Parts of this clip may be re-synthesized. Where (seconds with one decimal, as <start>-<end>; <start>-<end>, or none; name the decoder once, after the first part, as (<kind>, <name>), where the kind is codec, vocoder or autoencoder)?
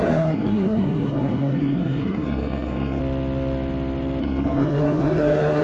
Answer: 0.0-3.0 (codec, SNAC); 4.2-5.6